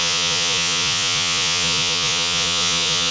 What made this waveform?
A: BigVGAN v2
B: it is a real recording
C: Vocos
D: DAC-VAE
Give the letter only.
C